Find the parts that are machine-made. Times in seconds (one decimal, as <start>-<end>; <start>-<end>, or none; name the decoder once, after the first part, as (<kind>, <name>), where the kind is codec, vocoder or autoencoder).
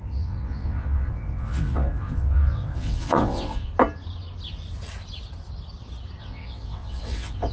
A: 0.0-3.7 (vocoder, WaveNeXt); 6.2-7.5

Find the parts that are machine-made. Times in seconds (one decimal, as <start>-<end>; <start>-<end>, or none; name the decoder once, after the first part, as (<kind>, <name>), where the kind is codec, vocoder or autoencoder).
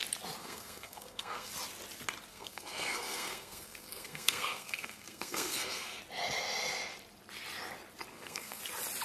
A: 0.4-1.5 (codec, SNAC); 2.3-6.0; 8.1-8.6